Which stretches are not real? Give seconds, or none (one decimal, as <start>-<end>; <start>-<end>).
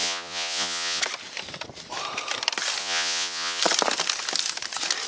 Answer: 0.0-1.0; 2.8-3.6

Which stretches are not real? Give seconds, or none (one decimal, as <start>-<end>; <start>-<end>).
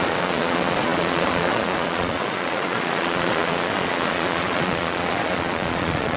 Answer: 0.0-6.2